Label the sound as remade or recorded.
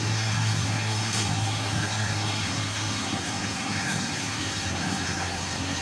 remade